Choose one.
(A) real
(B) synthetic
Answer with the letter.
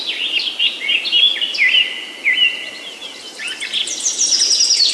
A